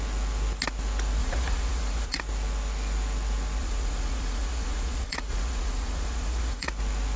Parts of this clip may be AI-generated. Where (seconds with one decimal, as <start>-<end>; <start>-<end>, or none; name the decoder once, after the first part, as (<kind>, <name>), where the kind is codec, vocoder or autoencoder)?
1.2-2.2 (vocoder, Vocos); 3.6-6.7